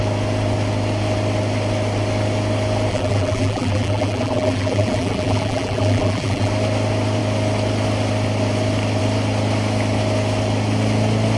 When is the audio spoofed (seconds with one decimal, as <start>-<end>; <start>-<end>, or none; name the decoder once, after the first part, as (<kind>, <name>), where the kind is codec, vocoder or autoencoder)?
2.9-6.5 (vocoder, BigVGAN v2)